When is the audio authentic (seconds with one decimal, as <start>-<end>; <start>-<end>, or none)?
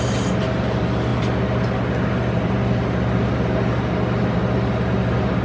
0.0-5.4